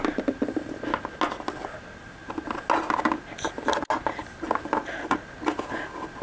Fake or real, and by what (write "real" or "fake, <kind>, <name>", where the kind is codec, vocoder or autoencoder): real